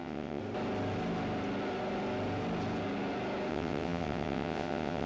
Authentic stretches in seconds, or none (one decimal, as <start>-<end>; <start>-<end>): 0.4-3.5